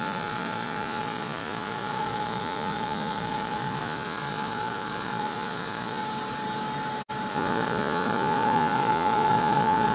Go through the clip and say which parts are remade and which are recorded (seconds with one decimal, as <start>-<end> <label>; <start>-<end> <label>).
0.0-6.0 remade; 6.0-7.3 recorded; 7.3-9.9 remade